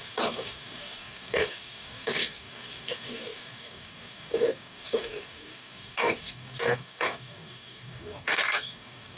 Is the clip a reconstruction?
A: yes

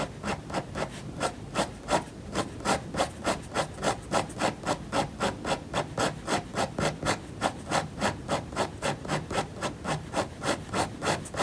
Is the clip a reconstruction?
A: no